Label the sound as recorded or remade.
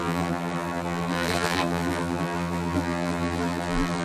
remade